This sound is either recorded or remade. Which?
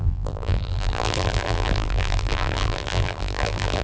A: remade